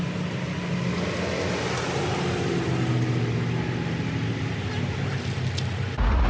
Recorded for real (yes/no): yes